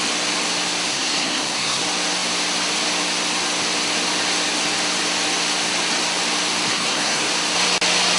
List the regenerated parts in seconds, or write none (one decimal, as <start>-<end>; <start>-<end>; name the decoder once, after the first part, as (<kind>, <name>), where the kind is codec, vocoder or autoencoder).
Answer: 0.9-1.8 (codec, SNAC); 6.7-7.3